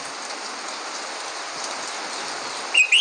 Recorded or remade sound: recorded